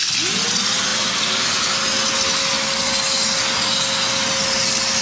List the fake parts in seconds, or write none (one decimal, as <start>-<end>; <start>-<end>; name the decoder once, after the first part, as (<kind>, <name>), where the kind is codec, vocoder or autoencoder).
none